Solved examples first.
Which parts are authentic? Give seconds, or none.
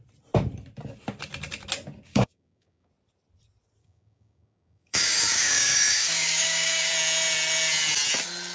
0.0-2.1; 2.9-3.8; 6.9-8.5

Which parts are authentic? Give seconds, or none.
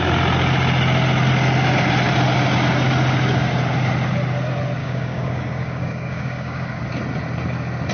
0.0-4.8; 6.8-7.9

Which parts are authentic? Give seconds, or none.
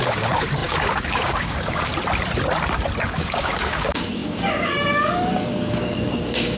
1.9-3.0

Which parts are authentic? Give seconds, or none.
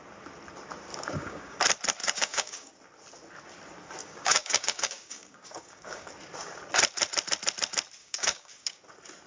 0.0-0.9; 1.6-2.0; 2.7-4.0; 6.1-8.0; 8.8-9.3